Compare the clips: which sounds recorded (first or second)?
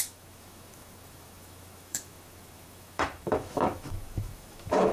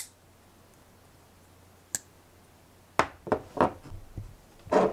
second